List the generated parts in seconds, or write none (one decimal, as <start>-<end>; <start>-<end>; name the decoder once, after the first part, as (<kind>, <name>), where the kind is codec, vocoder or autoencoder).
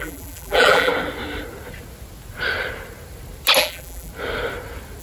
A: 0.0-0.9 (vocoder, BigVGAN v2); 3.6-4.1